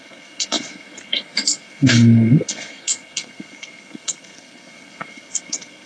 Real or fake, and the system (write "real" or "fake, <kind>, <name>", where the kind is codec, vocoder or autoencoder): fake, codec, SNAC